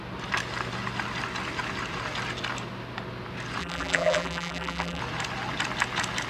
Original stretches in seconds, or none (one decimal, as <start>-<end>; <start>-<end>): 0.0-3.6; 5.0-6.3